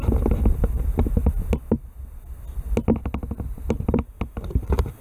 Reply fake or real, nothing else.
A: real